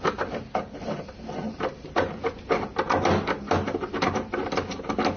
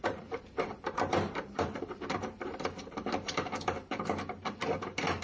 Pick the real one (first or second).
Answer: first